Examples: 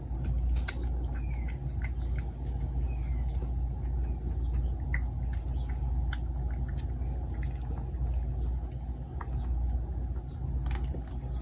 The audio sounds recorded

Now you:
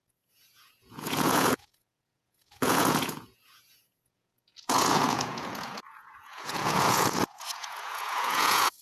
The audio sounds remade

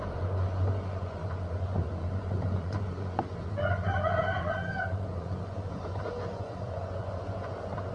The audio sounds remade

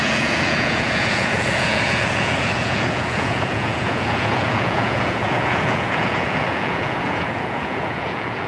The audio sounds remade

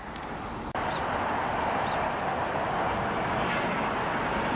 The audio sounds recorded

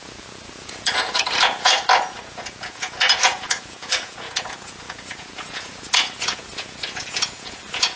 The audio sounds remade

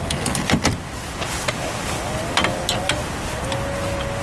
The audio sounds recorded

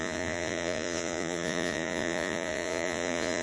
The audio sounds remade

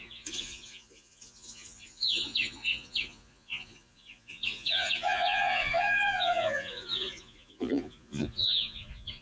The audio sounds remade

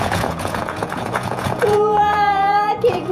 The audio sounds remade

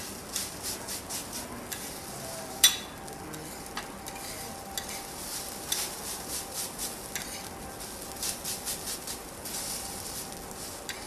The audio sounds recorded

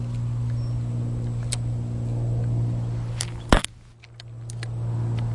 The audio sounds recorded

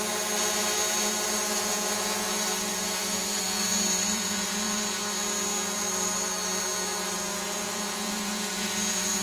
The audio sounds remade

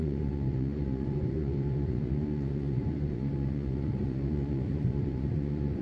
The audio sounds remade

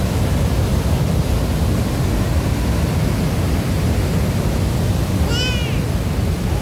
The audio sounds recorded